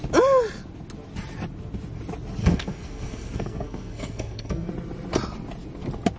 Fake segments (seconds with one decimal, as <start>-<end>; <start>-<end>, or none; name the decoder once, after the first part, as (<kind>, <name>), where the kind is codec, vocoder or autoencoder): 2.4-4.7 (codec, SNAC)